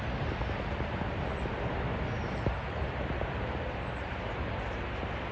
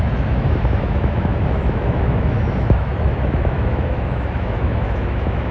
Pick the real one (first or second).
first